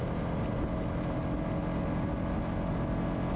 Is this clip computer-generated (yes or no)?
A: no